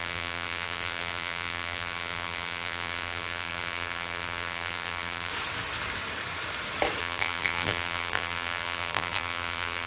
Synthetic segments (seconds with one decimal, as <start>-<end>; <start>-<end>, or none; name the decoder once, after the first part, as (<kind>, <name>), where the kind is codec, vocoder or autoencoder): 0.0-5.3 (vocoder, BigVGAN v2); 7.0-9.9